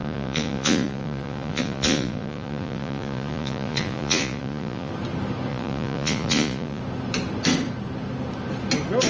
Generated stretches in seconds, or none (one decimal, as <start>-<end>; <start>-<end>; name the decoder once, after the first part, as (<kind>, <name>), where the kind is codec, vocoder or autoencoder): 0.0-4.9 (vocoder, Vocos); 5.5-6.8